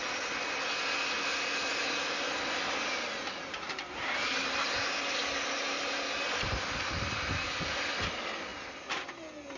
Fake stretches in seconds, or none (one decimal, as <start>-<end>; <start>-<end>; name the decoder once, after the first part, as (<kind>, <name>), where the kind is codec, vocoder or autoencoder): none